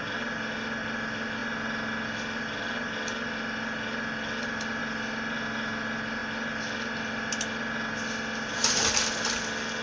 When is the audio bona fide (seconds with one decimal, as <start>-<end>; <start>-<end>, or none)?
0.0-9.8